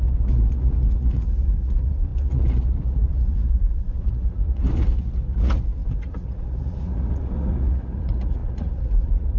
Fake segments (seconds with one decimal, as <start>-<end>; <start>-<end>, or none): 0.0-9.4